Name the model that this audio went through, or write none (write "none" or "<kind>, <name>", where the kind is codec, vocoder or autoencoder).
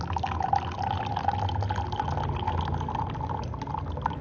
none